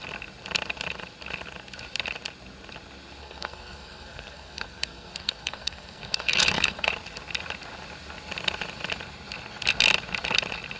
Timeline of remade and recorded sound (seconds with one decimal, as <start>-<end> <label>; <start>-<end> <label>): 0.0-3.2 recorded; 3.2-6.9 remade; 6.9-10.8 recorded